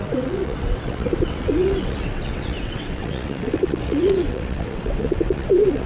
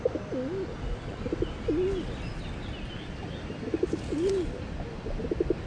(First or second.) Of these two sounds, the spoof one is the first